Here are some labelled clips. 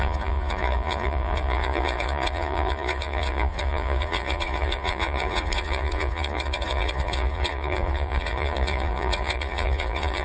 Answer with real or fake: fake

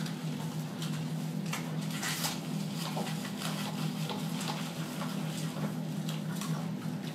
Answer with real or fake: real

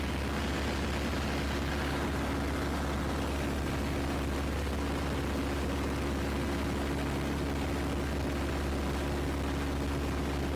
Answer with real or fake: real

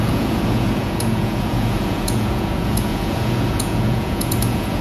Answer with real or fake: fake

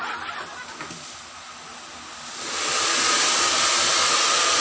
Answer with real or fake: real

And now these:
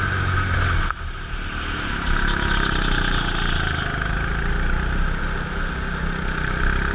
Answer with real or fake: real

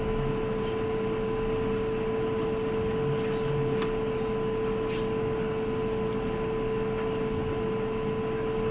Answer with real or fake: real